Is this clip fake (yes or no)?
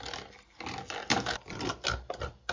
no